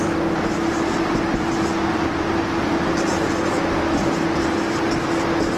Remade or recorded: recorded